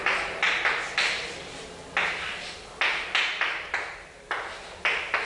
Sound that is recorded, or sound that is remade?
recorded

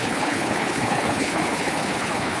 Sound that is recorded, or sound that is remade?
remade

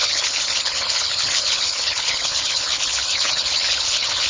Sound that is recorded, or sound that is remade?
remade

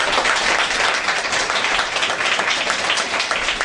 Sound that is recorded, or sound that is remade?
recorded